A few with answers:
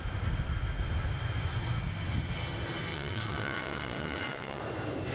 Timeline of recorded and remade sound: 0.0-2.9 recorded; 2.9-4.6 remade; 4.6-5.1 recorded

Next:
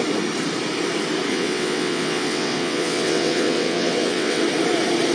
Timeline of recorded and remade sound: 0.0-1.3 recorded; 1.3-4.4 remade; 4.4-5.1 recorded

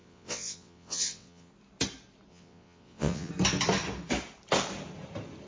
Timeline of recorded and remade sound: 0.0-1.5 remade; 1.5-2.3 recorded; 2.3-3.3 remade; 3.3-5.5 recorded